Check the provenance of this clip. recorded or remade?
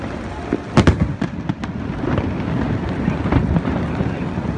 recorded